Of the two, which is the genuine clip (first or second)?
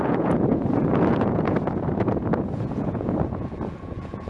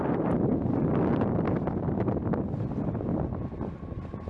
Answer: second